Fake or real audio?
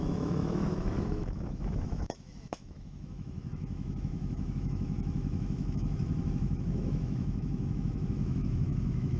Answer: fake